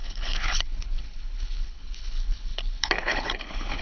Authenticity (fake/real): fake